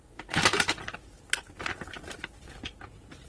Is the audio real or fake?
real